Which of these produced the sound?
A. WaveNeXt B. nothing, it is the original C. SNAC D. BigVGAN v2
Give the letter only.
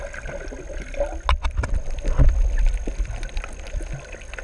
B